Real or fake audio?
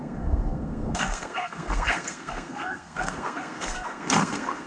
fake